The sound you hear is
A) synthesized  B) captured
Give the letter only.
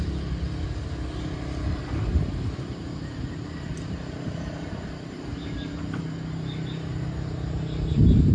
B